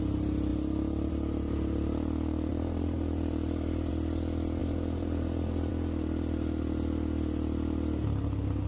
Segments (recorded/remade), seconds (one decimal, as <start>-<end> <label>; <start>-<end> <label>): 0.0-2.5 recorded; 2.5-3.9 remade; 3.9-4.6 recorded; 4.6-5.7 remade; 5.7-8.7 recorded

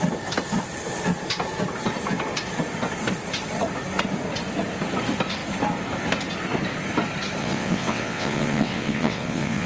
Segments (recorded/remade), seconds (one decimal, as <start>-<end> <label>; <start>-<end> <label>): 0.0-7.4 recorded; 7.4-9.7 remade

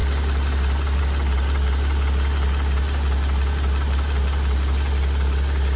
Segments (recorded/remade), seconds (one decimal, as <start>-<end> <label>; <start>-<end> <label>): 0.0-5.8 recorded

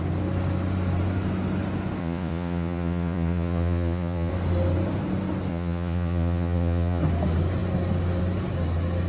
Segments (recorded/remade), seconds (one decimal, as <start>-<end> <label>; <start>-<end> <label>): 0.0-2.0 recorded; 2.0-4.3 remade; 4.3-5.5 recorded; 5.5-7.0 remade; 7.0-9.1 recorded

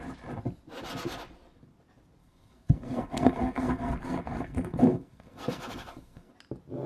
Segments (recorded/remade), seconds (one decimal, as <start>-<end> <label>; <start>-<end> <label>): 0.0-2.2 recorded; 2.2-6.3 remade; 6.3-6.9 recorded

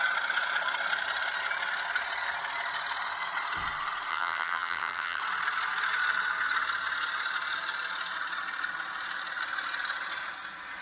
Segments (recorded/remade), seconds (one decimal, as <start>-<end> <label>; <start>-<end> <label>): 0.0-4.1 recorded; 4.1-5.2 remade; 5.2-10.8 recorded

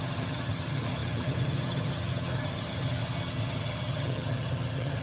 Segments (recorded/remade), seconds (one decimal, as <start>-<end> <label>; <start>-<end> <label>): 0.0-5.0 remade

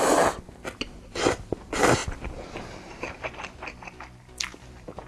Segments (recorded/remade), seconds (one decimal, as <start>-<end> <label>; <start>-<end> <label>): 0.0-5.1 recorded